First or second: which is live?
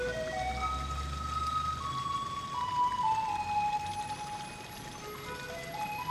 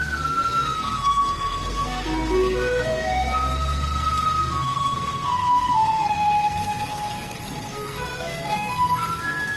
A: first